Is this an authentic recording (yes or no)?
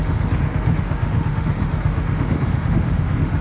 no